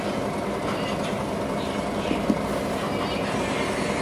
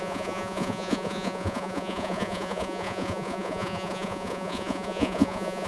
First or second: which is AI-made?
second